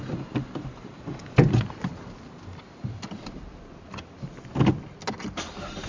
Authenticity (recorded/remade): recorded